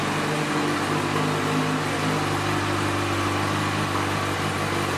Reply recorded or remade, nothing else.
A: recorded